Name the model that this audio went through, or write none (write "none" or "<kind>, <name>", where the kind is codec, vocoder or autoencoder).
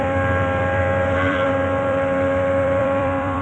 vocoder, BigVGAN v2